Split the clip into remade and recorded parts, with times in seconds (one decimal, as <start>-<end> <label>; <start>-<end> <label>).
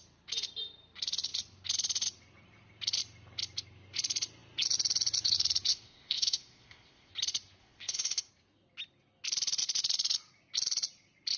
0.0-5.7 recorded; 5.7-7.1 remade; 7.1-7.6 recorded; 7.6-8.3 remade; 8.3-11.4 recorded